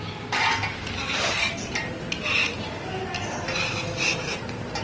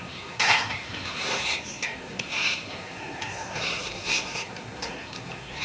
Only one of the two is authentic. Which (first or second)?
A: first